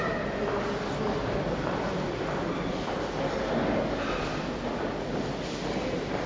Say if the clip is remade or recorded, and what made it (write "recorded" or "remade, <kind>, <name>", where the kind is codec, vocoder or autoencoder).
recorded